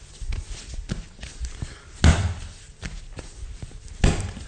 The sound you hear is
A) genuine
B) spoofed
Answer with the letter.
A